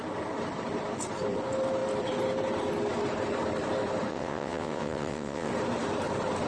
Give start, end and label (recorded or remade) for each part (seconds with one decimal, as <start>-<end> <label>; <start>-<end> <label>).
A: 0.0-4.1 recorded; 4.1-5.5 remade; 5.5-6.5 recorded